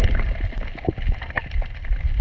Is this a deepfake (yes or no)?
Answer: no